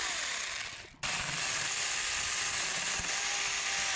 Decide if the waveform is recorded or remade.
recorded